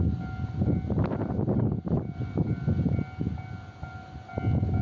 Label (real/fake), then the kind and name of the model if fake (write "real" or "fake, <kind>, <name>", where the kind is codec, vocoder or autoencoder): real